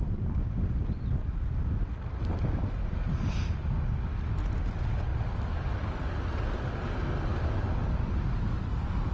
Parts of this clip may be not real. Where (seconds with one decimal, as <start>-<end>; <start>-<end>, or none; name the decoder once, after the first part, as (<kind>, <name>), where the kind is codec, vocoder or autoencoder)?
none